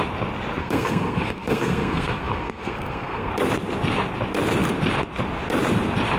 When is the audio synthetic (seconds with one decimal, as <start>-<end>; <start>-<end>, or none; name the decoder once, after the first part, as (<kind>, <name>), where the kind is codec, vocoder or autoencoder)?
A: 0.6-3.3 (codec, SNAC)

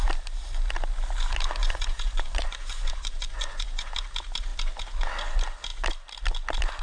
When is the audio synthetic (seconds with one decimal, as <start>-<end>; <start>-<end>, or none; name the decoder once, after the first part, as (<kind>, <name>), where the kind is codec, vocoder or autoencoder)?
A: 1.6-3.9 (vocoder, Vocos)

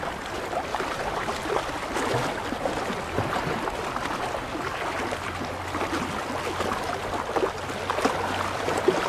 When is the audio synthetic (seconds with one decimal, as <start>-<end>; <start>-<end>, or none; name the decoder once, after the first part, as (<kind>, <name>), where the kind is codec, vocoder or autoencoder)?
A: 0.7-1.4 (vocoder, BigVGAN v2)

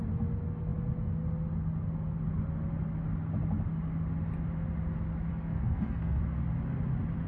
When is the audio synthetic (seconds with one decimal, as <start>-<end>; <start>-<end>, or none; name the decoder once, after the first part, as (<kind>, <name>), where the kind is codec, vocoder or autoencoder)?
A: 5.3-6.2 (codec, SNAC)

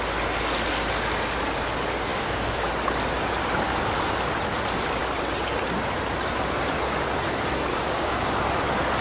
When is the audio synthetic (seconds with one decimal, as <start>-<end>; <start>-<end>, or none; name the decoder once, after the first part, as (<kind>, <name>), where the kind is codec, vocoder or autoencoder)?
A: 2.1-2.7 (codec, DAC); 7.7-8.3